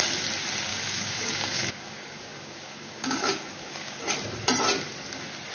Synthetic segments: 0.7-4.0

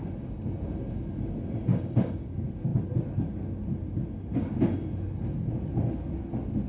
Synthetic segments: 1.7-2.3

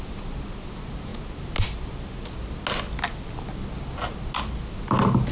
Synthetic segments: none

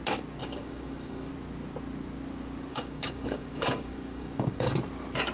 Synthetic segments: 0.4-1.3; 2.7-4.8